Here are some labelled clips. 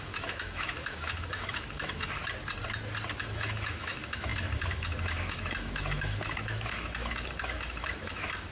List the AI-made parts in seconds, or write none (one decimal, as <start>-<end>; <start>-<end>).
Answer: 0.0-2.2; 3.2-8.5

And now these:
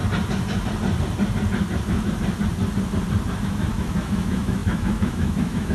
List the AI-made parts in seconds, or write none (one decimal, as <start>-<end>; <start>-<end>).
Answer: 3.4-5.7

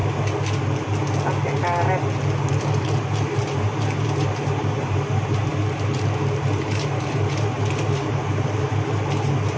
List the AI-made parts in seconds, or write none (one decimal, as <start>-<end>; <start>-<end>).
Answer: 2.5-5.5; 6.4-9.6

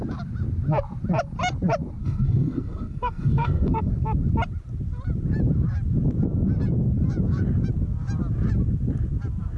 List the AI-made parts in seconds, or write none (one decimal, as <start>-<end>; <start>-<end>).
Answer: 2.0-3.9

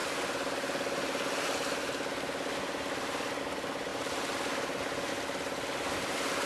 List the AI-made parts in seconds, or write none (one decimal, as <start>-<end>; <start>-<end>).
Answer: none

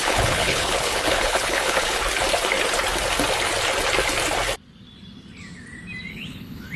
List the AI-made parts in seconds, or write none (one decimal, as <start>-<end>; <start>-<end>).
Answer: 0.0-2.0; 6.1-6.8

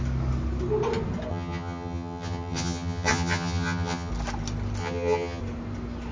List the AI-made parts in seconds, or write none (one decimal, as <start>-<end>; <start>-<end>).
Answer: 1.3-4.1; 4.8-5.4

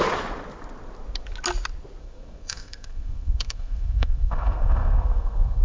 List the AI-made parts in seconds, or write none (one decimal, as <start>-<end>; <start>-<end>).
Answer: 2.0-5.6